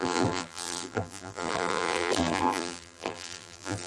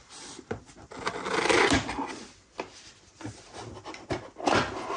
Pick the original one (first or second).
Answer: second